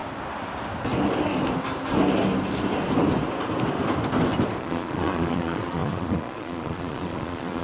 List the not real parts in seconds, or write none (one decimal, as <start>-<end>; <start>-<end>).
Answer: 4.6-7.6